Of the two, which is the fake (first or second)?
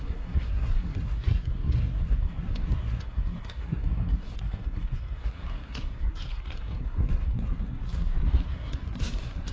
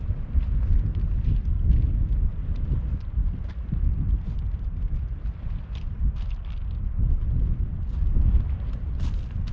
first